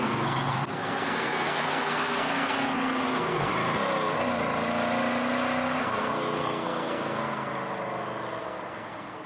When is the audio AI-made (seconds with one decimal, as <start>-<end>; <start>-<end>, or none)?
0.0-3.5; 5.8-7.5; 8.4-9.3